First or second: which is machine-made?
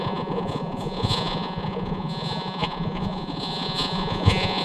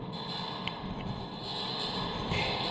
first